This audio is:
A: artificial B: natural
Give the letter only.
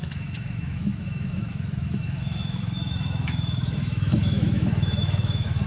A